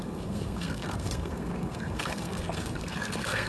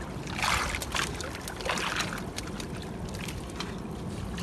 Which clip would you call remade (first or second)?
first